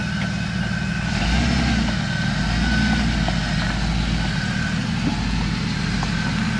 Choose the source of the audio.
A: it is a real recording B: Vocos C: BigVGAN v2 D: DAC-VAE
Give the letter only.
A